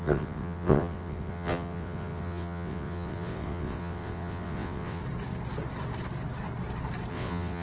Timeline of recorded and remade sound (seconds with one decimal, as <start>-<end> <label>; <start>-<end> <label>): 0.0-5.0 remade; 5.0-7.1 recorded; 7.1-7.6 remade